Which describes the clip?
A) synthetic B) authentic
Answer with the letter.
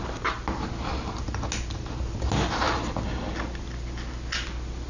B